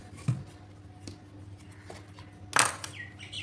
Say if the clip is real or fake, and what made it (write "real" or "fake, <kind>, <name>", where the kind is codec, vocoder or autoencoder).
real